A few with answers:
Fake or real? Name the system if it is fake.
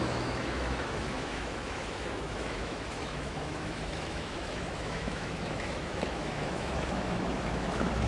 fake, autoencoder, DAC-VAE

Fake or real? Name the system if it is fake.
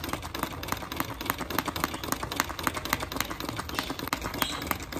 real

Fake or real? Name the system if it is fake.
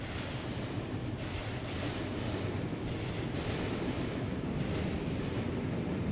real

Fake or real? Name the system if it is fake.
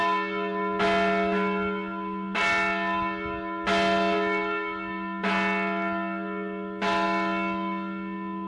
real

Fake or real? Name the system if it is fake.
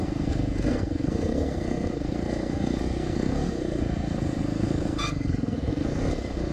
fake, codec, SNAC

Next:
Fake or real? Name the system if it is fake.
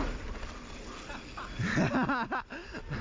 real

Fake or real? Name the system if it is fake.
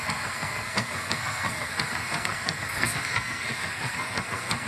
fake, codec, SNAC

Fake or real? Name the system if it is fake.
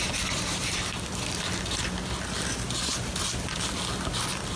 real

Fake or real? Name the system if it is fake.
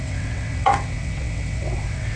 fake, vocoder, WaveNeXt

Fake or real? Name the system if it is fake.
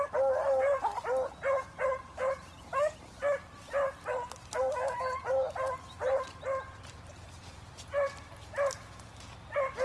real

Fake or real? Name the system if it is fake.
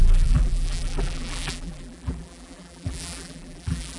fake, vocoder, BigVGAN v2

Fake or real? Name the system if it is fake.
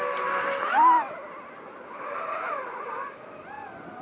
real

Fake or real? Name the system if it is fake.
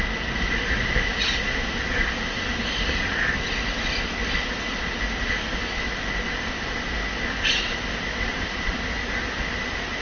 real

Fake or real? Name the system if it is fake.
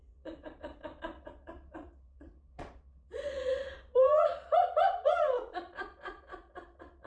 fake, vocoder, Vocos